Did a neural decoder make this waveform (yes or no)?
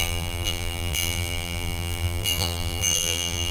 yes